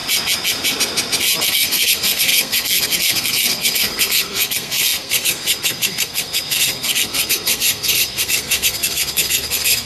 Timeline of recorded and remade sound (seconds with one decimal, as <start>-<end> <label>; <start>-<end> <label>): 0.0-1.4 recorded; 1.4-9.8 remade